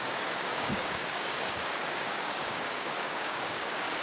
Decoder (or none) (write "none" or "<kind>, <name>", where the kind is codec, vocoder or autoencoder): codec, DAC